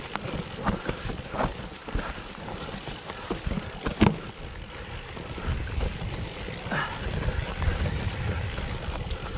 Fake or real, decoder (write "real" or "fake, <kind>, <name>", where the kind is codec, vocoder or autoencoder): real